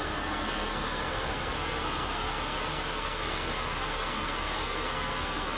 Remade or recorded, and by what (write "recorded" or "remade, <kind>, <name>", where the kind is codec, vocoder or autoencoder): remade, codec, SNAC